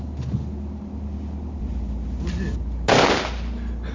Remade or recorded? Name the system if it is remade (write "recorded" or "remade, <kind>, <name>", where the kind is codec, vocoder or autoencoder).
recorded